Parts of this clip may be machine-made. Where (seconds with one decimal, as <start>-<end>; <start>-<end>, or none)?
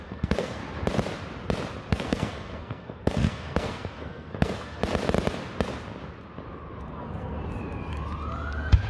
0.0-0.6; 1.9-4.8; 6.8-7.4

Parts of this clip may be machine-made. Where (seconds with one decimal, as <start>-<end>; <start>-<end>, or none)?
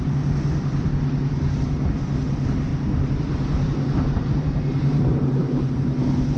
2.7-5.7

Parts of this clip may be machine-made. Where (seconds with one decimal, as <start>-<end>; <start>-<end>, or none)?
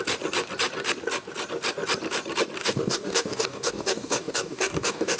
2.6-5.2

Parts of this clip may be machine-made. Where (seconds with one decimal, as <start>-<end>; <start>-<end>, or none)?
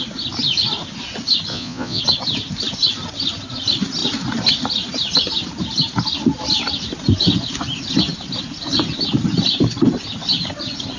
1.5-2.0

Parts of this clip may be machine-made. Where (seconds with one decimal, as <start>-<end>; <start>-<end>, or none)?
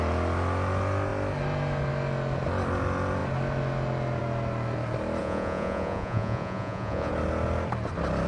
5.2-7.1